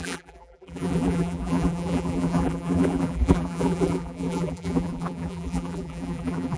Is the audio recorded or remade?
remade